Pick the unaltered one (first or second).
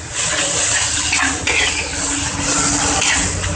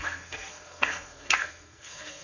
first